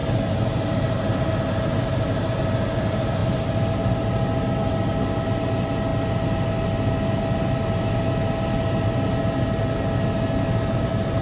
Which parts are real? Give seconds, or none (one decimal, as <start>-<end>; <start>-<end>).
0.0-11.2